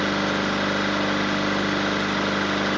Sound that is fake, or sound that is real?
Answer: real